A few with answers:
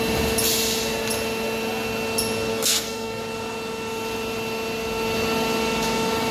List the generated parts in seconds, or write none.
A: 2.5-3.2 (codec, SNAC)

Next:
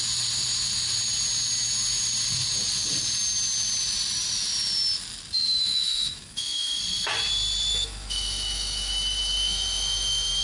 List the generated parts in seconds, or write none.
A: 5.6-6.8 (autoencoder, DAC-VAE); 7.7-10.4